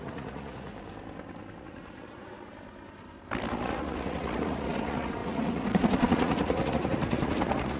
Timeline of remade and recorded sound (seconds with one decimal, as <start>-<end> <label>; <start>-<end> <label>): 0.0-0.7 remade; 0.7-1.6 recorded; 1.6-2.5 remade; 2.5-3.5 recorded; 3.5-7.8 remade